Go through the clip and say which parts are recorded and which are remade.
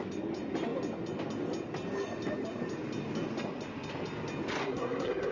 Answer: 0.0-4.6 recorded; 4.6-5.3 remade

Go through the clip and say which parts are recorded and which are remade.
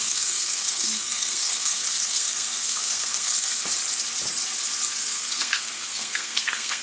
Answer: 0.0-3.6 remade; 3.6-5.0 recorded; 5.0-6.8 remade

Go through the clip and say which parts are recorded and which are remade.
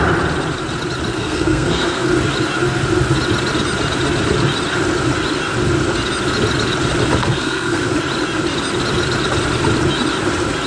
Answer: 0.0-1.1 recorded; 1.1-2.1 remade; 2.1-7.2 recorded; 7.2-7.9 remade; 7.9-10.7 recorded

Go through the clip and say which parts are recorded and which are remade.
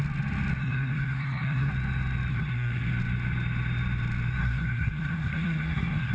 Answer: 0.0-0.6 recorded; 0.6-1.7 remade; 1.7-2.3 recorded; 2.3-2.9 remade; 2.9-4.4 recorded; 4.4-6.1 remade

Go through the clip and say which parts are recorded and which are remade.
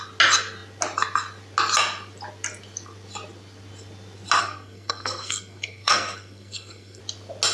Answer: 0.0-4.4 recorded; 4.4-7.0 remade; 7.0-7.5 recorded